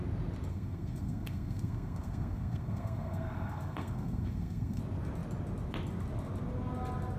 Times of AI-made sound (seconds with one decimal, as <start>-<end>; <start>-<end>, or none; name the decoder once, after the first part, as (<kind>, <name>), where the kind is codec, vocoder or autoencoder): 0.5-4.8 (codec, SNAC)